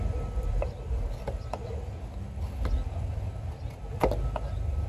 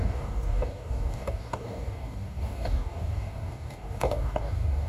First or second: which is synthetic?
second